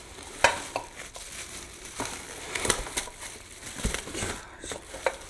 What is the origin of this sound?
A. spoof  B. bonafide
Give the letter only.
B